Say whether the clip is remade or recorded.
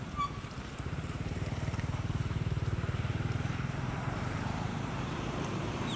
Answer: remade